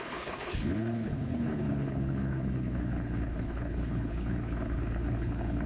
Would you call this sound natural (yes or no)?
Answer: no